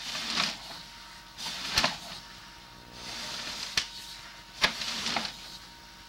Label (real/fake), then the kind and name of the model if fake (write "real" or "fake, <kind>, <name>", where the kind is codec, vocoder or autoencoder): real